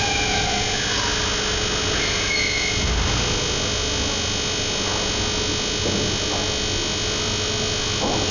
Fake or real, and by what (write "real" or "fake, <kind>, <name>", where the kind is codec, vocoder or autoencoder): real